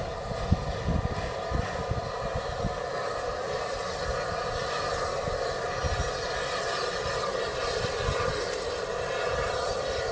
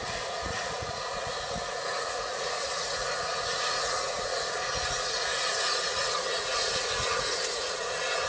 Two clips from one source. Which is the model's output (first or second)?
second